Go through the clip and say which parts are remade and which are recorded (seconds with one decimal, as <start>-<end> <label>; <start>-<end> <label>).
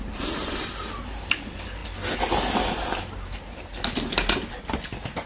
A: 0.0-5.3 recorded